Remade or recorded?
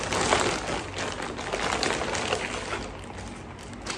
recorded